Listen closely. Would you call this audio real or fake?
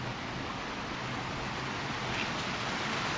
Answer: real